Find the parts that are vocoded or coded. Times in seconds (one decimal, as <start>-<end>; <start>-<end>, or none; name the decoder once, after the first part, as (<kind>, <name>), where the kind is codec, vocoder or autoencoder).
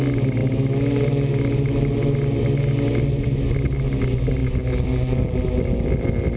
none